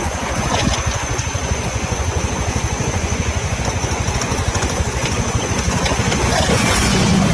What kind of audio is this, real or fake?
fake